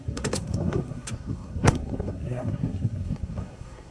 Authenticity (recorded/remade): remade